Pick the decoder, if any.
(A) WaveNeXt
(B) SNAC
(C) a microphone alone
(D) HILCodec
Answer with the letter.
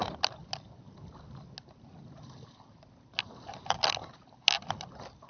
C